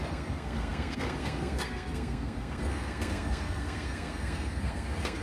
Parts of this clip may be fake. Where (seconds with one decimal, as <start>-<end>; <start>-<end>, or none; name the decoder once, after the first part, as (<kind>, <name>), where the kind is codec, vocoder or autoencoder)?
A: 0.0-5.2 (codec, SNAC)